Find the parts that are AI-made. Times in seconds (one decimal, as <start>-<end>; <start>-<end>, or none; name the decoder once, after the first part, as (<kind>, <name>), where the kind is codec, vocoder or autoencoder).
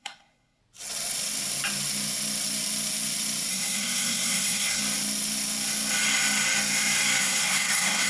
0.0-0.6 (codec, SNAC); 3.5-4.8; 7.2-8.1